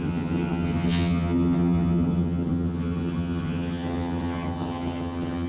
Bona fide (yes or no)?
no